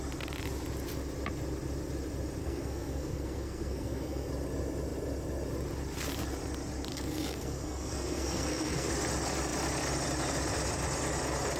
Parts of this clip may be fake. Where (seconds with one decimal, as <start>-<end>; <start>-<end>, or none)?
2.4-4.3; 6.9-8.9